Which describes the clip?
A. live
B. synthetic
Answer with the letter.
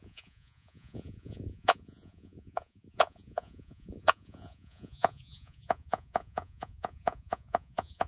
B